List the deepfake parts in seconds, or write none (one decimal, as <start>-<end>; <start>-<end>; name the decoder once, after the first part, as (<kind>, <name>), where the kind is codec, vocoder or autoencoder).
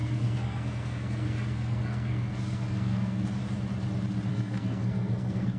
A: 0.0-3.4 (codec, SNAC); 4.3-5.6